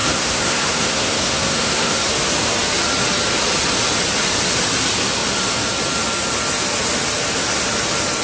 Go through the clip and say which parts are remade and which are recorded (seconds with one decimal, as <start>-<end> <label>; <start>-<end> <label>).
0.0-2.1 remade; 2.1-8.2 recorded